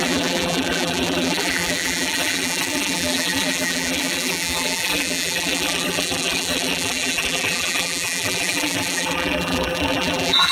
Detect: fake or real fake